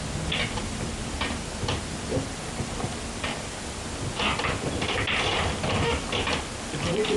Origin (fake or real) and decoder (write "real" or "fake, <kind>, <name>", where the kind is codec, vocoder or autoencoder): real